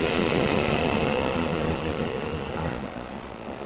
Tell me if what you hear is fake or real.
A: fake